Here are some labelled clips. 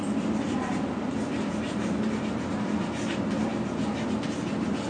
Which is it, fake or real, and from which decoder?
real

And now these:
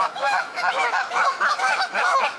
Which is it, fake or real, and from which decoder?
fake, autoencoder, DAC-VAE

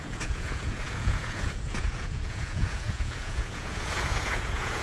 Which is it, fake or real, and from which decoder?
fake, vocoder, Vocos